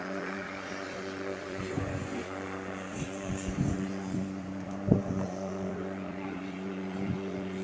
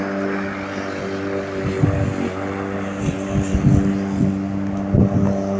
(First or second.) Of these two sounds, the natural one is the second